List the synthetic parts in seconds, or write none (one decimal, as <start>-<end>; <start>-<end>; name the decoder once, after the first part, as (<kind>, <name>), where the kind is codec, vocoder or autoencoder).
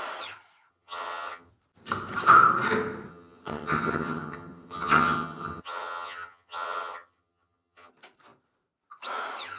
0.7-1.5 (vocoder, HiFi-GAN); 3.1-7.9